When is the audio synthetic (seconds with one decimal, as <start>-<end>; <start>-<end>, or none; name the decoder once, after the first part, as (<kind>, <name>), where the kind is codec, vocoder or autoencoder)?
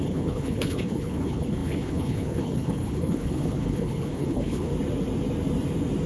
0.0-4.7 (codec, HILCodec)